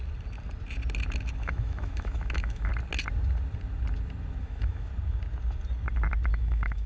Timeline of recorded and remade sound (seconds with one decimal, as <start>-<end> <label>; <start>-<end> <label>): 0.0-1.4 recorded; 1.4-2.7 remade; 2.7-4.4 recorded; 4.4-4.9 remade; 4.9-6.3 recorded; 6.3-6.9 remade